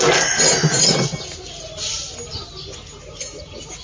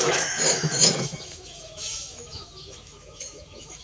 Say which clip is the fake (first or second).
second